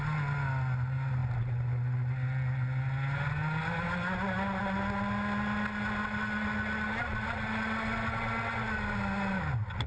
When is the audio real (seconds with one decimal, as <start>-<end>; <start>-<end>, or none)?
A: 0.0-9.9